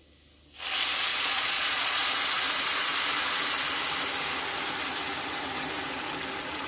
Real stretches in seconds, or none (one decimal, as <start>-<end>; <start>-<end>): 0.0-1.1; 2.1-6.7